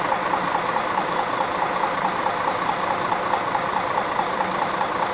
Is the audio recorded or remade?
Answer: remade